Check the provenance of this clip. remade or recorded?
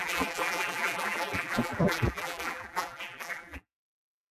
remade